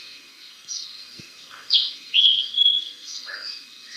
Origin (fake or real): fake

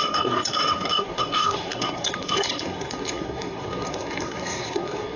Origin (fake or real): fake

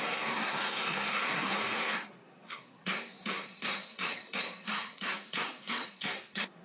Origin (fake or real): fake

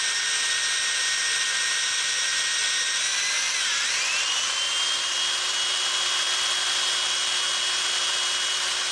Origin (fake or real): real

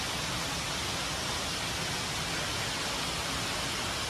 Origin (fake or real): real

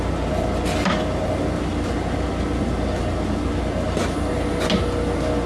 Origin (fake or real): real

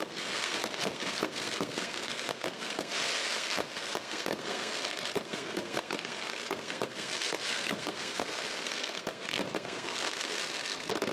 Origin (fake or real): fake